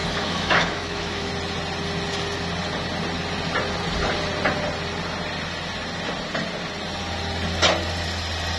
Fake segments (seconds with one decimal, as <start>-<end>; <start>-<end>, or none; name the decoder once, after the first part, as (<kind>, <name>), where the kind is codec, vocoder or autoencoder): 0.0-1.3 (autoencoder, DAC-VAE)